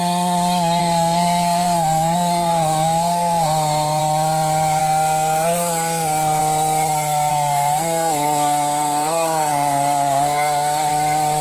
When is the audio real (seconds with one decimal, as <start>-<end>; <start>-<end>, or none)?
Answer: 0.0-0.8; 4.0-4.8; 6.4-7.3; 10.9-11.4